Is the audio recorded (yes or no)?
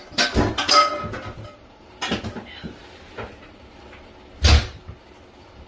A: yes